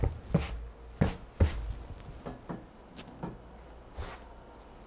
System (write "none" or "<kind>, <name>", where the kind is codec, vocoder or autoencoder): none